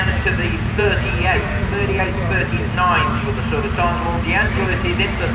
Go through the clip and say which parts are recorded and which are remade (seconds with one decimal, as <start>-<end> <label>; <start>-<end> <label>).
0.0-0.4 recorded; 0.4-2.0 remade; 2.0-5.3 recorded